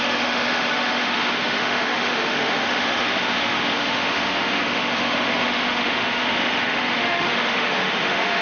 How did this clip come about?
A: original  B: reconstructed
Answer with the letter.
B